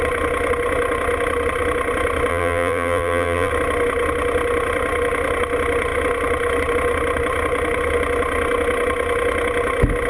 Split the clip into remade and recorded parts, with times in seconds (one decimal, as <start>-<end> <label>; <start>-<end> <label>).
0.0-2.3 recorded; 2.3-3.5 remade; 3.5-10.1 recorded